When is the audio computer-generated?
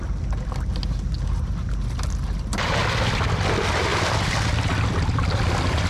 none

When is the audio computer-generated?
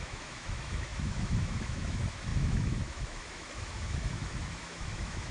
0.0-5.3 (autoencoder, DAC-VAE)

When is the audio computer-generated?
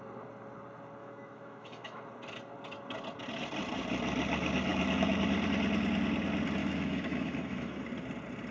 1.0-2.0 (autoencoder, DAC-VAE); 4.7-5.2; 6.6-7.8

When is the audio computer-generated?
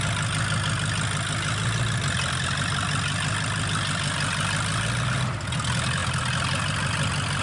none